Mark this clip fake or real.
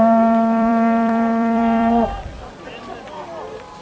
fake